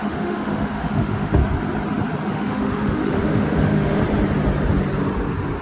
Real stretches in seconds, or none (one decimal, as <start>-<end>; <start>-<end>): 1.4-2.3; 4.0-5.6